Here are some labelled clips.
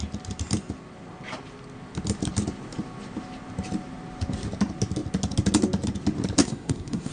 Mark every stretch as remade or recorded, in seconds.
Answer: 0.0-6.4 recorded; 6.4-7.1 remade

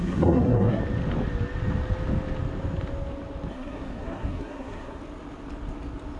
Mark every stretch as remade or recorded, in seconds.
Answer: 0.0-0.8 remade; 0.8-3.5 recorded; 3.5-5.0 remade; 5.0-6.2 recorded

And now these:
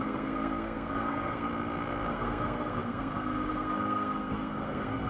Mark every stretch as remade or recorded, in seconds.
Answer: 0.0-1.5 remade; 1.5-2.1 recorded; 2.1-5.1 remade

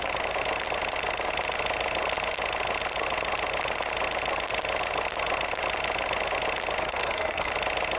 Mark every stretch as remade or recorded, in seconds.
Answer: 0.0-6.8 recorded; 6.8-7.5 remade; 7.5-8.0 recorded

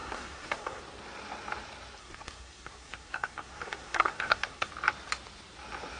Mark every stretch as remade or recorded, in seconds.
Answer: 0.0-0.8 remade; 0.8-2.0 recorded; 2.0-4.7 remade; 4.7-6.0 recorded

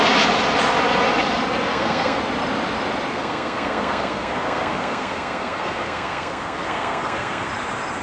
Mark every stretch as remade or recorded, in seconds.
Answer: 0.0-1.7 recorded; 1.7-2.2 remade; 2.2-3.1 recorded; 3.1-7.5 remade; 7.5-8.0 recorded

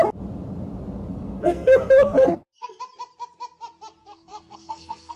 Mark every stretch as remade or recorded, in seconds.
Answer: 0.0-1.1 recorded; 1.1-2.8 remade; 2.8-4.0 recorded; 4.0-5.2 remade

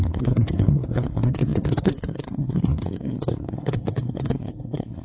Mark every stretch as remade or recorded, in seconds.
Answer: 0.0-5.0 remade